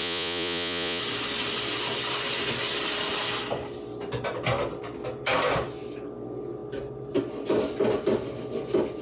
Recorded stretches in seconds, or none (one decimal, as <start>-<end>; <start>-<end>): 1.0-9.0